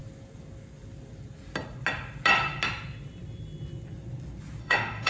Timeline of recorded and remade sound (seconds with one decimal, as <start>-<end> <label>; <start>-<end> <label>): 0.0-4.6 recorded; 4.6-5.1 remade